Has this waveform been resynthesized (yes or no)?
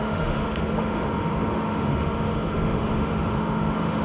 yes